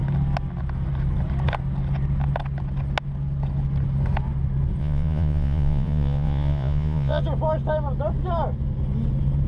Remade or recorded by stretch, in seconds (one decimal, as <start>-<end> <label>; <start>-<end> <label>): 0.0-4.8 recorded; 4.8-7.2 remade; 7.2-9.5 recorded